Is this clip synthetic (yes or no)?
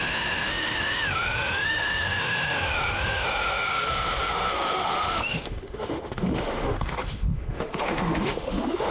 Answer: yes